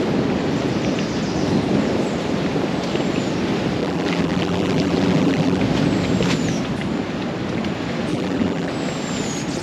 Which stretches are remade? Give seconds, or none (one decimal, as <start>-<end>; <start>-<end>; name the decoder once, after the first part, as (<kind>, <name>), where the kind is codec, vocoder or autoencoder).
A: 3.8-5.6 (vocoder, BigVGAN v2); 8.1-8.7